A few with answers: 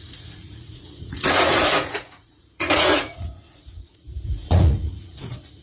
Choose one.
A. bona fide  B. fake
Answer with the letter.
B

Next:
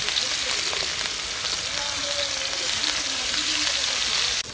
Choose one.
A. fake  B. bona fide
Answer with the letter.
B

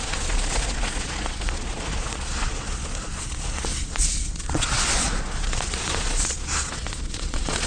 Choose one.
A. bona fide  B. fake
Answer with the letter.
B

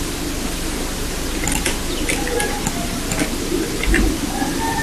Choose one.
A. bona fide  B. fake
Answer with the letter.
A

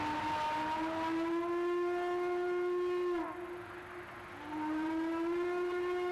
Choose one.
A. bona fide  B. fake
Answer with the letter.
A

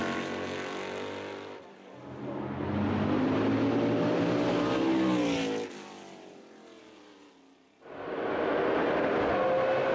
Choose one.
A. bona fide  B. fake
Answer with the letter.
A